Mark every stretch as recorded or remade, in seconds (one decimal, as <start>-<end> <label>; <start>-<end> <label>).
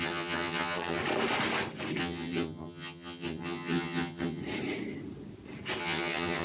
0.0-1.0 remade; 1.0-2.0 recorded; 2.0-4.4 remade; 4.4-5.8 recorded; 5.8-6.4 remade